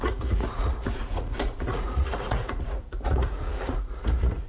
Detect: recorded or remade remade